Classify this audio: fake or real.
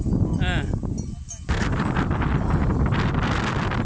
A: real